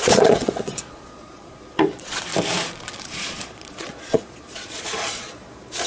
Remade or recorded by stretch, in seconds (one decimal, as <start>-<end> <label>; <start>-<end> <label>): 0.0-2.3 remade; 2.3-3.0 recorded; 3.0-5.9 remade

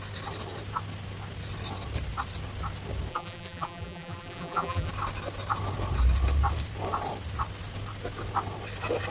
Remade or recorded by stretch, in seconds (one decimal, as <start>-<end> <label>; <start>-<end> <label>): 0.0-3.1 recorded; 3.1-4.9 remade; 4.9-9.1 recorded

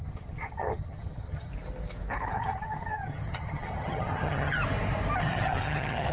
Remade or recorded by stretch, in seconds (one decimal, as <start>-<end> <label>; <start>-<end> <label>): 0.0-1.5 remade; 1.5-2.3 recorded; 2.3-4.6 remade; 4.6-5.2 recorded; 5.2-6.1 remade

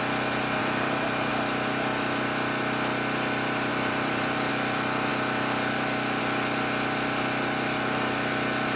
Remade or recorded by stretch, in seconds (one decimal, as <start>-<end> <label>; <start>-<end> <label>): 0.0-0.6 recorded; 0.6-1.3 remade; 1.3-3.7 recorded; 3.7-4.5 remade; 4.5-8.8 recorded

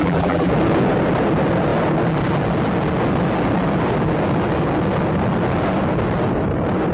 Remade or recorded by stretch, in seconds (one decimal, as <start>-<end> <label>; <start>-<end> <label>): 0.0-0.5 remade; 0.5-6.9 recorded